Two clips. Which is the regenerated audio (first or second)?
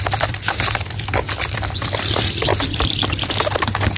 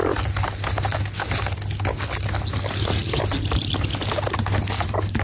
first